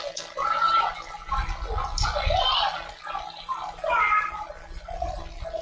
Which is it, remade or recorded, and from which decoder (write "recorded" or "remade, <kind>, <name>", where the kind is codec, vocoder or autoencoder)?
recorded